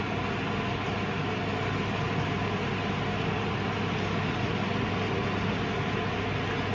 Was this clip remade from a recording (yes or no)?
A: no